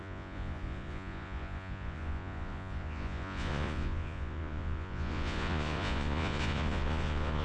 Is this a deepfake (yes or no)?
yes